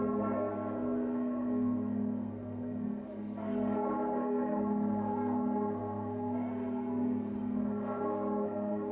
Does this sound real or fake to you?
fake